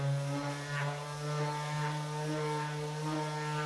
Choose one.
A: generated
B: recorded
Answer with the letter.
B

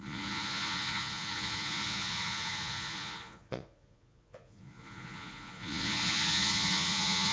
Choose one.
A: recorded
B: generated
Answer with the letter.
B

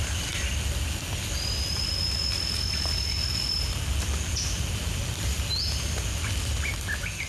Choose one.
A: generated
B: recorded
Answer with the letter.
B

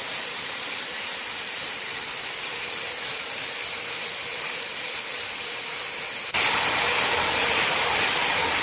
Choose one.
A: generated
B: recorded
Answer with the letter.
B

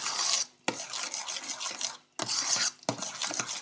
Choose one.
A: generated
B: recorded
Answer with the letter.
B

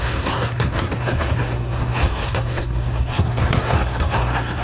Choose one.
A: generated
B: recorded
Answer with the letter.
A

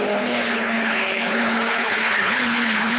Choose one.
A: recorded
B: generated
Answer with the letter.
B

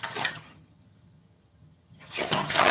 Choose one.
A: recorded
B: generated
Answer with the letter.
B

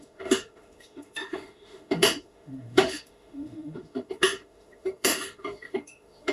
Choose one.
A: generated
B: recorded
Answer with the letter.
A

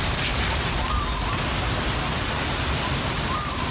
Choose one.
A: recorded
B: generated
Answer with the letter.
A